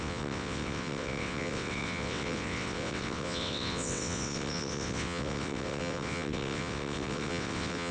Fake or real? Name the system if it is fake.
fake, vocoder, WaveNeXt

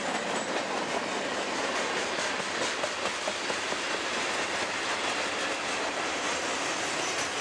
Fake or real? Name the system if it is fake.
real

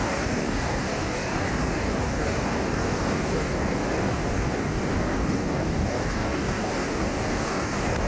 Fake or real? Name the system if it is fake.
fake, codec, DAC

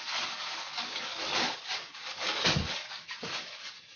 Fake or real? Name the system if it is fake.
fake, codec, DAC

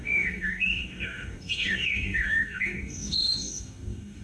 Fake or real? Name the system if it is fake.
fake, codec, DAC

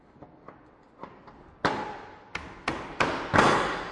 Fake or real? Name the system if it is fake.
real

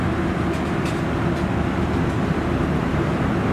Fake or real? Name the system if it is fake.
real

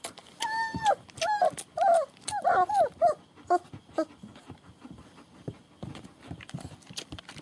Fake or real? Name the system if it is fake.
real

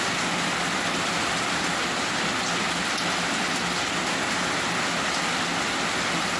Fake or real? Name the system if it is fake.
real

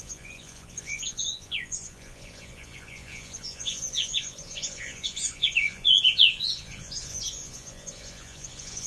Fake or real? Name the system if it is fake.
fake, vocoder, Vocos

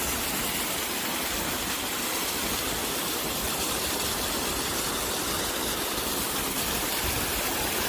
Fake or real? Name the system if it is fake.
real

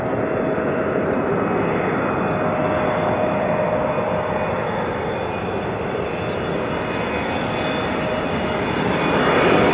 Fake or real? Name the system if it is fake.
real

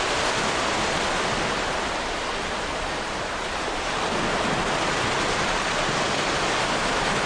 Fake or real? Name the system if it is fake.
real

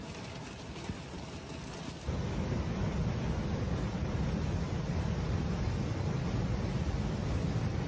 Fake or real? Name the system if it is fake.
real